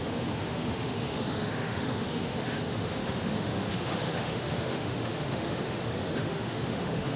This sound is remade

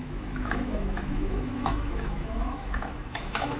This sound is remade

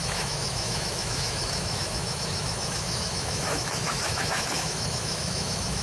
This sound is remade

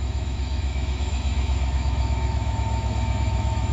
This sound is remade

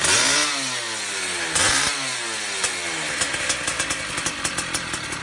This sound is recorded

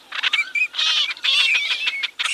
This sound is recorded